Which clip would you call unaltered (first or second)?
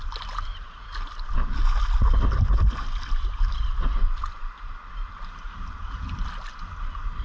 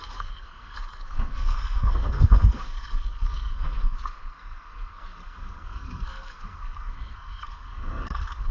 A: first